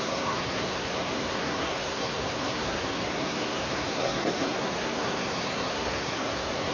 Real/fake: fake